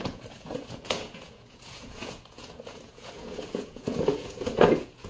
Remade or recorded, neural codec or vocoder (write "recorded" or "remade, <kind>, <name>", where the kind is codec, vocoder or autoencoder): remade, vocoder, Vocos